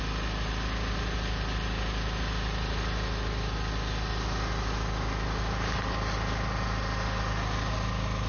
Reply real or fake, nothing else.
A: real